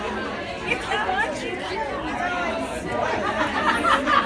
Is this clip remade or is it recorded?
recorded